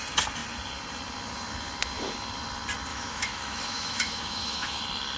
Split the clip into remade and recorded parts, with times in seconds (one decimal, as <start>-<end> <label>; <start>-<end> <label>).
0.0-2.9 recorded; 2.9-4.8 remade; 4.8-5.2 recorded